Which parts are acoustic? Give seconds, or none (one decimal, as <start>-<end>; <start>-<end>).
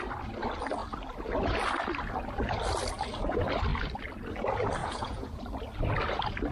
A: 0.0-4.8; 5.4-6.5